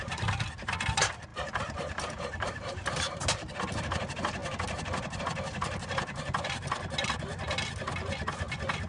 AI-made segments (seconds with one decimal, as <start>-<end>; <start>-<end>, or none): 1.3-3.6